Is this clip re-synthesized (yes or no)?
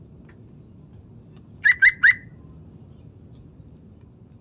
no